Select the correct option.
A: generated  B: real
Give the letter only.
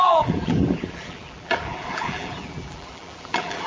A